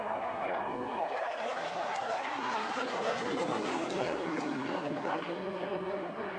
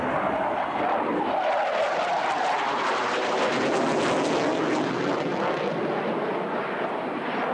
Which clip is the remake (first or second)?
first